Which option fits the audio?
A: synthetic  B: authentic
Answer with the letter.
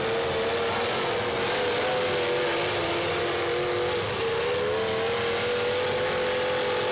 B